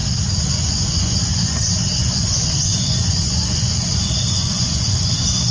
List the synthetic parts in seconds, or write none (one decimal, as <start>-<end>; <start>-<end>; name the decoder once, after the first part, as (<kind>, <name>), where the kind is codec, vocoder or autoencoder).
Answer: 0.5-5.5 (vocoder, Vocos)